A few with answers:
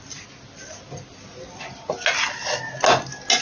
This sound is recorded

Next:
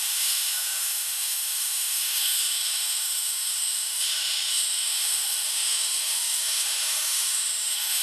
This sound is remade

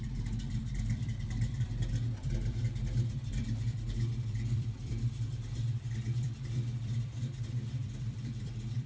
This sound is remade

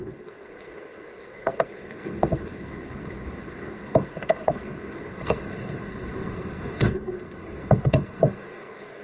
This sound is remade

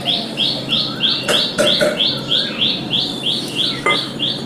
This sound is recorded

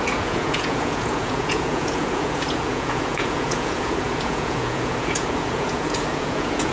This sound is remade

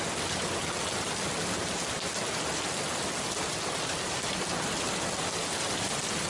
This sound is recorded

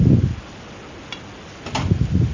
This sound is recorded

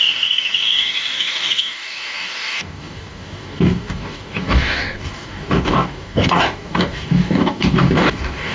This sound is remade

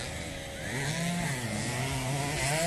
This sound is recorded